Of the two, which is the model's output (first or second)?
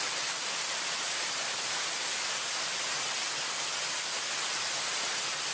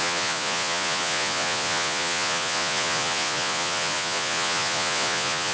second